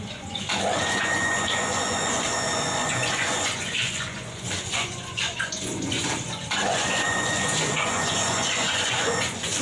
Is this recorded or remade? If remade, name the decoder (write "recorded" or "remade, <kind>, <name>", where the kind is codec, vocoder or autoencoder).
remade, vocoder, Vocos